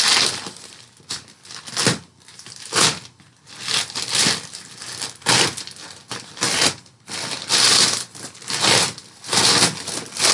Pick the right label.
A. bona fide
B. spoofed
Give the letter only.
A